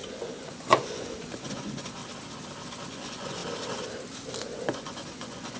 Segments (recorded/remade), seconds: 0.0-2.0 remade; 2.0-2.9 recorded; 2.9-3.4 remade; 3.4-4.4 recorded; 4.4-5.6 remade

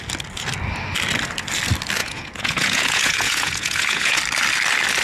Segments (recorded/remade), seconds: 0.0-2.0 recorded; 2.0-4.2 remade; 4.2-5.0 recorded

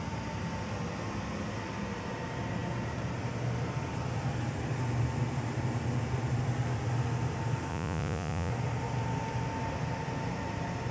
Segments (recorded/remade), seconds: 0.0-7.7 recorded; 7.7-8.5 remade; 8.5-10.9 recorded

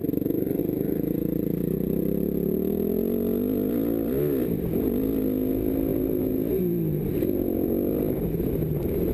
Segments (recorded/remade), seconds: 0.0-9.1 recorded

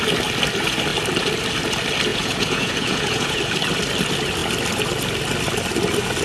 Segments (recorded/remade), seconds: 0.0-2.1 recorded; 2.1-3.4 remade; 3.4-6.2 recorded

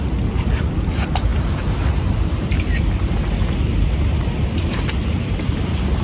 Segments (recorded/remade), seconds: 0.0-6.0 recorded